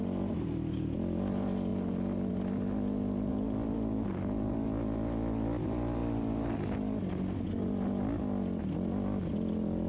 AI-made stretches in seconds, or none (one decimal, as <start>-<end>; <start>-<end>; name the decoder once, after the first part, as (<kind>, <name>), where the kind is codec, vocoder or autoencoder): none